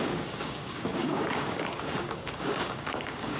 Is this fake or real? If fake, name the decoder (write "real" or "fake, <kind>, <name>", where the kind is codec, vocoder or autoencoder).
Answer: fake, codec, DAC